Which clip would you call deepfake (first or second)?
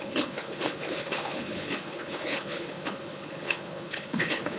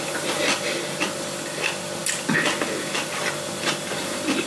first